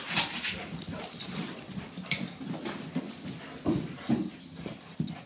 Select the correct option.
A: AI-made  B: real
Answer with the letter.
B